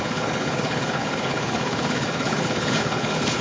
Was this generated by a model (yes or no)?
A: yes